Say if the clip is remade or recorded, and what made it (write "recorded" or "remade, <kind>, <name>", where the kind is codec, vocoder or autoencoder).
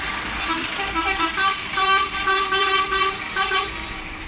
remade, vocoder, BigVGAN v2